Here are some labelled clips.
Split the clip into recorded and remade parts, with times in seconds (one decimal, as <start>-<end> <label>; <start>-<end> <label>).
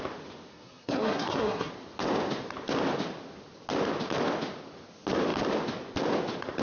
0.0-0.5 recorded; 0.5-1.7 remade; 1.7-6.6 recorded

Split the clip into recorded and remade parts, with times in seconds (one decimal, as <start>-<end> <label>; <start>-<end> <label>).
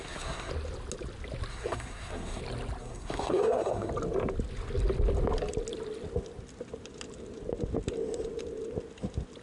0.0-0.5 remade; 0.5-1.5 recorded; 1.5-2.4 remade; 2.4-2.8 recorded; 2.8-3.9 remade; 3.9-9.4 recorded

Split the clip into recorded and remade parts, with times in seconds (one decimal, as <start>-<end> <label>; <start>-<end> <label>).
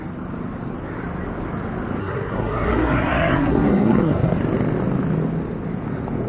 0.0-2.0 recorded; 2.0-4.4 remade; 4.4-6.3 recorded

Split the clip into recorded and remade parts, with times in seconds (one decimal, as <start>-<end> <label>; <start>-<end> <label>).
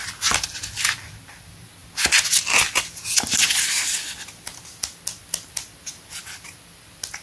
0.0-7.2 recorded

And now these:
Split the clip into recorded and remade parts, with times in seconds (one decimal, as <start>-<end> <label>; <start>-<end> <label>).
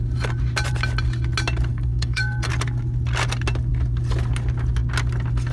0.0-1.7 recorded; 1.7-2.5 remade; 2.5-5.5 recorded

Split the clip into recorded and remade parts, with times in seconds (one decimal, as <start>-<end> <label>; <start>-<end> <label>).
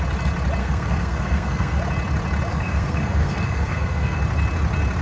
0.0-0.6 recorded; 0.6-1.8 remade; 1.8-2.5 recorded; 2.5-4.2 remade; 4.2-5.0 recorded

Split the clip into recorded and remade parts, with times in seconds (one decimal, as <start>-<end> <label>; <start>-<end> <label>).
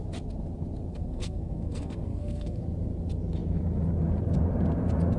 0.0-0.9 recorded; 0.9-2.6 remade; 2.6-5.2 recorded